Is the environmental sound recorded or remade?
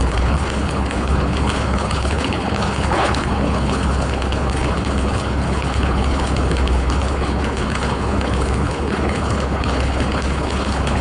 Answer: remade